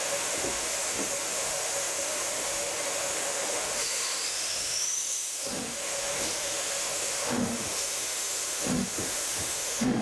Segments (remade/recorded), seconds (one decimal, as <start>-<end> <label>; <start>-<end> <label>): 0.0-10.0 remade